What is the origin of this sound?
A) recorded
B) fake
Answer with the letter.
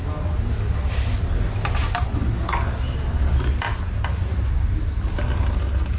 A